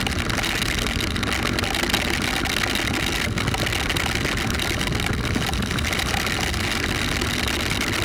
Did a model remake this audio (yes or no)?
no